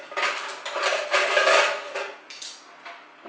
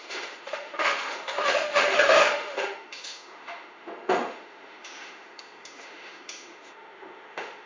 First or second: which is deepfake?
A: second